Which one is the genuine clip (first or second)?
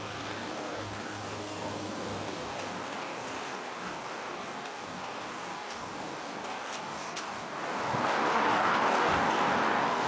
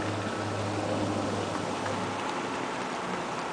second